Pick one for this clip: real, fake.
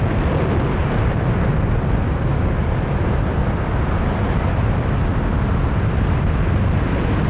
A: real